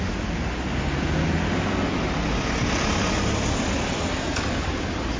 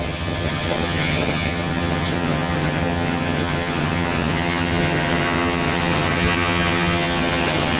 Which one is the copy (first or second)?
second